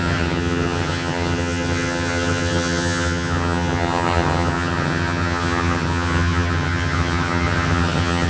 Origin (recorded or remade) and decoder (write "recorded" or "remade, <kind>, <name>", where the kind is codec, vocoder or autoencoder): remade, vocoder, HiFi-GAN